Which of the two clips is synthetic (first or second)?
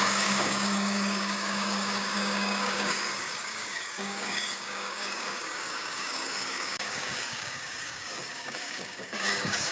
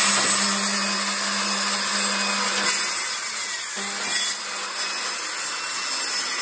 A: first